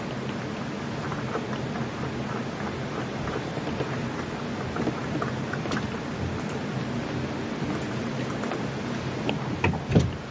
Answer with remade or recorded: recorded